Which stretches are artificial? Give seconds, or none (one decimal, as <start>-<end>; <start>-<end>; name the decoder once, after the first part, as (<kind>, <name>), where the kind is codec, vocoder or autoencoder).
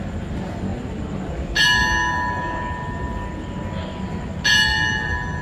none